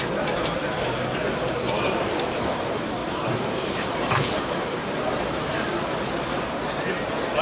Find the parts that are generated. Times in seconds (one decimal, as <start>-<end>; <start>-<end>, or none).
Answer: 3.0-6.1